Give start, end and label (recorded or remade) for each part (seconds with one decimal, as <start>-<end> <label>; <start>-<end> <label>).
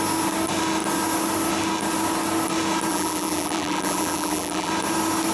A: 0.0-2.9 recorded; 2.9-4.7 remade; 4.7-5.3 recorded